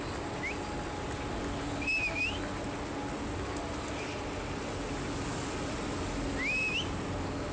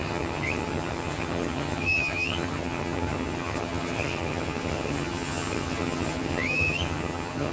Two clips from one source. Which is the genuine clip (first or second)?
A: first